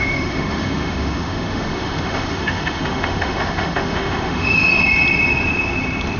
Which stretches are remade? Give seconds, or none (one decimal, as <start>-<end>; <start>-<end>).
0.0-4.7